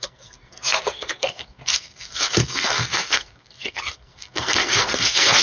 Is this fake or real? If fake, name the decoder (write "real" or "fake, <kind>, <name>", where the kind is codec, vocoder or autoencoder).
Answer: fake, codec, SNAC